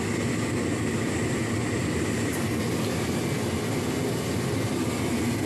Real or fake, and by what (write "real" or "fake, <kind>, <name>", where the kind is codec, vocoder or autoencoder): real